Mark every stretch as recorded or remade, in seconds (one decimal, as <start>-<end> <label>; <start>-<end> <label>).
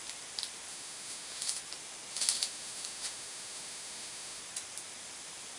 0.0-0.7 recorded; 0.7-1.6 remade; 1.6-2.1 recorded; 2.1-4.4 remade; 4.4-5.6 recorded